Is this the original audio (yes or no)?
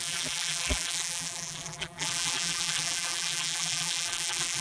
no